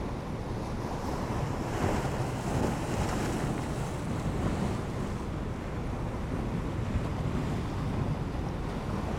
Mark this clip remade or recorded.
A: recorded